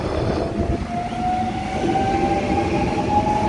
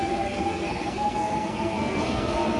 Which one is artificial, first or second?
second